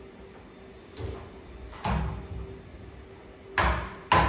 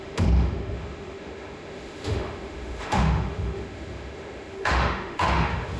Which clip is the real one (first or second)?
first